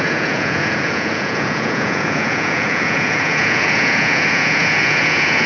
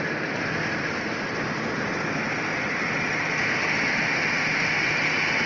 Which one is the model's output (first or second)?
first